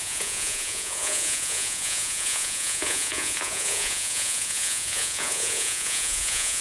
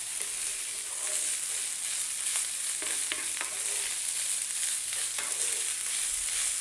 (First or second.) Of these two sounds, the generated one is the first